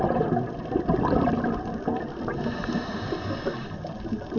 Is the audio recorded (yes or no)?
yes